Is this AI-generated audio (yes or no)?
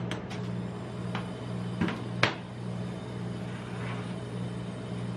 no